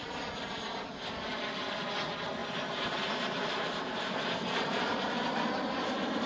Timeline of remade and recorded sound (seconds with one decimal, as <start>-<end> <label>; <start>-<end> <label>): 0.0-2.4 recorded; 2.4-6.3 remade